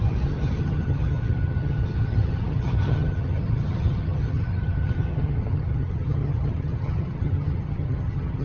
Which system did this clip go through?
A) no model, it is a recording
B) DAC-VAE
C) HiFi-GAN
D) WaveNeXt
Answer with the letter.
C